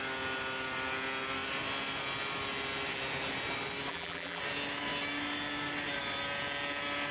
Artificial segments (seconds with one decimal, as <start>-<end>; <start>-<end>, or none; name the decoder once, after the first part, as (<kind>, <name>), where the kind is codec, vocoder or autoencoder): 3.9-4.4 (vocoder, BigVGAN v2)